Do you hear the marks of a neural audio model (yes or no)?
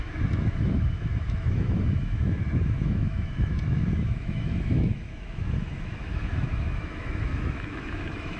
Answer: yes